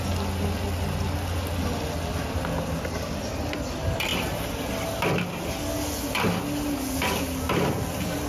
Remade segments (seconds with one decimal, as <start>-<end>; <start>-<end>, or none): none